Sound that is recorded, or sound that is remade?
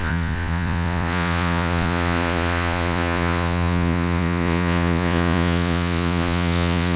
remade